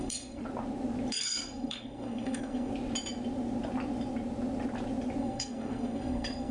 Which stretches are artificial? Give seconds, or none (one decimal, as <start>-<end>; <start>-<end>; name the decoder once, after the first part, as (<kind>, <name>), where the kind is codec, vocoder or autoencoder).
0.0-0.4 (codec, SNAC); 1.1-2.7; 5.2-6.5